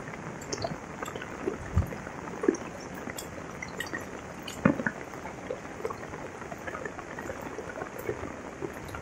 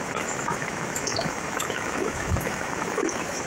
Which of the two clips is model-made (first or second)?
second